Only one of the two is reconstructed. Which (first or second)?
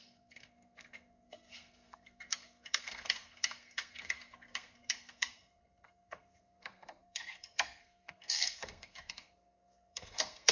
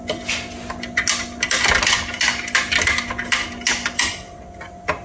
first